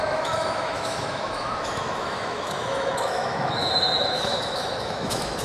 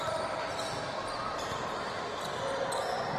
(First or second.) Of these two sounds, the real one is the second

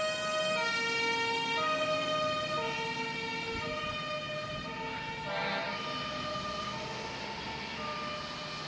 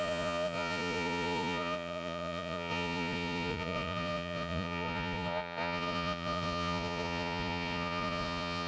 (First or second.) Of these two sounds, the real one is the first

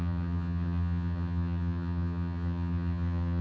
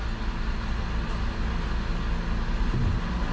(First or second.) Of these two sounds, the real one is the second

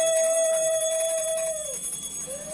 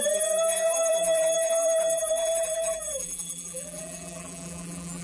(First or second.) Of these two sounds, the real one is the first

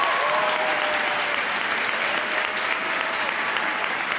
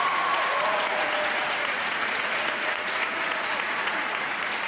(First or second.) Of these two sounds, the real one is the first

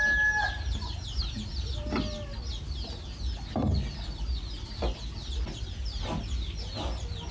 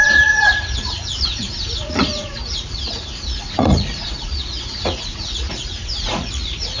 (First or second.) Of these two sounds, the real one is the first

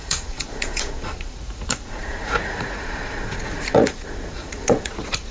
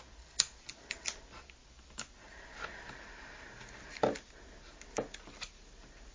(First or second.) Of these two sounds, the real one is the second